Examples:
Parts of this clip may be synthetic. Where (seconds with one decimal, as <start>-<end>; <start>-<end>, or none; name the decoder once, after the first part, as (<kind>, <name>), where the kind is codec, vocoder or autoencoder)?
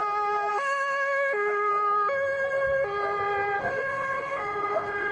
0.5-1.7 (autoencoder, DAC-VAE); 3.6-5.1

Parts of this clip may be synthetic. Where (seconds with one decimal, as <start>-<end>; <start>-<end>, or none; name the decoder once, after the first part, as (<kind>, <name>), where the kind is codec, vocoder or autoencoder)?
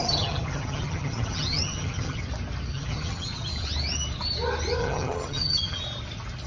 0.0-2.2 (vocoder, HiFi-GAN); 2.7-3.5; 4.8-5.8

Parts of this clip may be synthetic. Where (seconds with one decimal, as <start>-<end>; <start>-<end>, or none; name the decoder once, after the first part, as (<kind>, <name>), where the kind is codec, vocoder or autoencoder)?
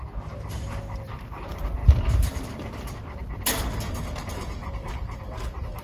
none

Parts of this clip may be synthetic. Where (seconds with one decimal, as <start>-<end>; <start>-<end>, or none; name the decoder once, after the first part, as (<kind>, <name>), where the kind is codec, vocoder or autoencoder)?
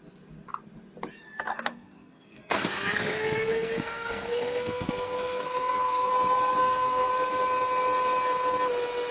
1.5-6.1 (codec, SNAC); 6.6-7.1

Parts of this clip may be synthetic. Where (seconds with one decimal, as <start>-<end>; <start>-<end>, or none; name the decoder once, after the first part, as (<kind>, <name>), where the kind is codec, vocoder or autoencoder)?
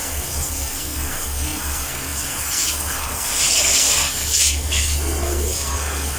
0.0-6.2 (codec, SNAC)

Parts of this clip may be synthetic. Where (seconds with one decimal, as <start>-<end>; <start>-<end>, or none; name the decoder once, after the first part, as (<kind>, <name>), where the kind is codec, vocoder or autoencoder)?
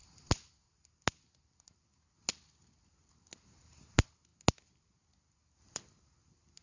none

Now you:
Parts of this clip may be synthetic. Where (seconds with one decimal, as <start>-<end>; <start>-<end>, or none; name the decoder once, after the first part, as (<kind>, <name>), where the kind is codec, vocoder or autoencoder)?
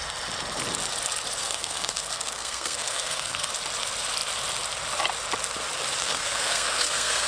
1.4-3.5 (codec, SNAC); 6.0-7.3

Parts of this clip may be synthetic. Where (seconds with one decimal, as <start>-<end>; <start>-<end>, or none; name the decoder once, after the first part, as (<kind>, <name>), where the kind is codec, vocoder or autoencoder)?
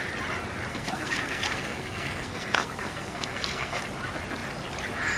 0.7-3.8 (codec, SNAC)